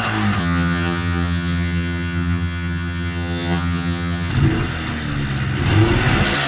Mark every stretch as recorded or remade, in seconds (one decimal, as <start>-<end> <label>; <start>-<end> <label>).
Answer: 0.0-0.4 recorded; 0.4-4.3 remade; 4.3-6.5 recorded